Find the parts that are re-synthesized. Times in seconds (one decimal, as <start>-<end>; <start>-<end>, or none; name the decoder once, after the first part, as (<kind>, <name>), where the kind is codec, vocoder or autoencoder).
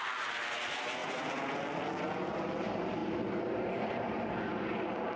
none